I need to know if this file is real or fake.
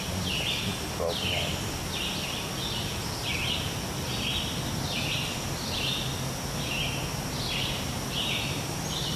real